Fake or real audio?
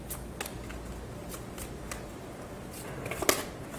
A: real